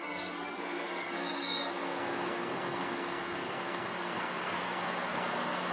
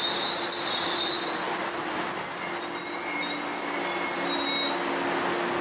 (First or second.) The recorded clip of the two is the second